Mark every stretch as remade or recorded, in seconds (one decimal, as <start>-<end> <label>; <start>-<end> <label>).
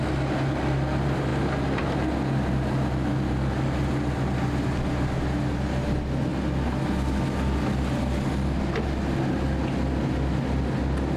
0.0-11.2 recorded